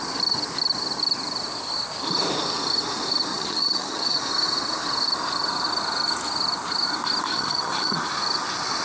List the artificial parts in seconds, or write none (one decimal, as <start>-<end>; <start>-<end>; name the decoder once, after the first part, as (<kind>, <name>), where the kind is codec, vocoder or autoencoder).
3.3-4.2 (vocoder, HiFi-GAN); 7.3-8.0